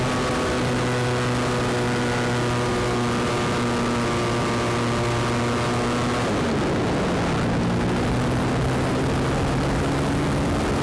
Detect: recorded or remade recorded